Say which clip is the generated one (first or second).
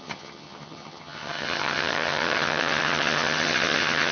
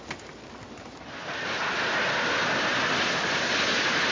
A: first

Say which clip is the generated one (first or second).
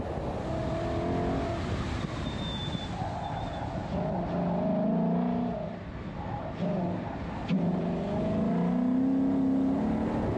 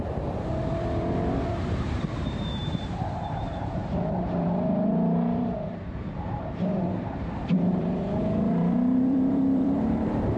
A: second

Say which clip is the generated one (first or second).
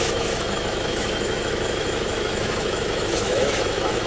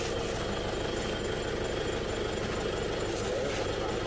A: first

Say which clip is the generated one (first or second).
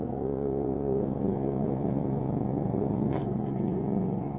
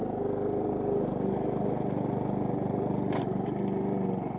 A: first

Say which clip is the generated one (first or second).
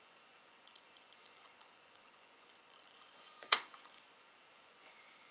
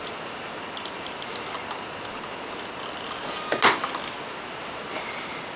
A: first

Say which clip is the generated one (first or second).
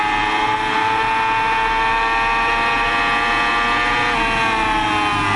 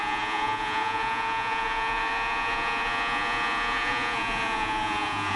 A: second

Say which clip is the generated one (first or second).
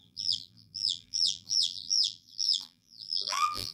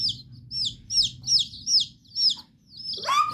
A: first